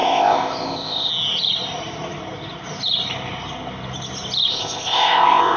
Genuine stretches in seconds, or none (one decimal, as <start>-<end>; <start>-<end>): 1.1-4.5